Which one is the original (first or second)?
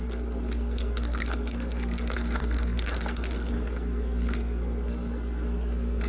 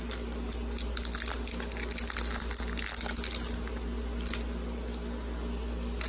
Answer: second